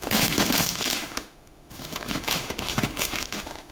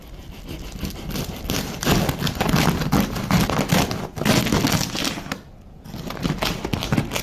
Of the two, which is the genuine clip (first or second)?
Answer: second